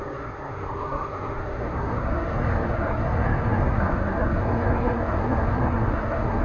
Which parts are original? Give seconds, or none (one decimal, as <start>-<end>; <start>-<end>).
none